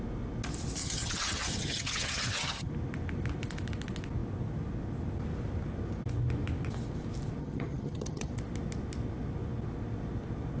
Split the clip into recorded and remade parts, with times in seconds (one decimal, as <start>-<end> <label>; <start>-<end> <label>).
0.0-0.8 recorded; 0.8-2.7 remade; 2.7-7.4 recorded; 7.4-8.3 remade; 8.3-10.6 recorded